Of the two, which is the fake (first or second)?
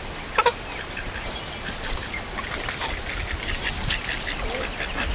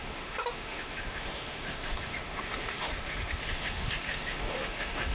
second